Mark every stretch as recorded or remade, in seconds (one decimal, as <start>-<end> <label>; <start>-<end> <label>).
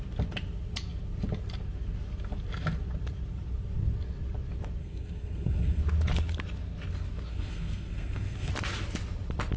0.0-4.8 recorded; 4.8-5.8 remade; 5.8-7.3 recorded; 7.3-8.5 remade; 8.5-9.6 recorded